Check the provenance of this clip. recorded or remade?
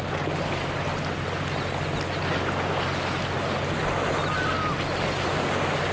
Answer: recorded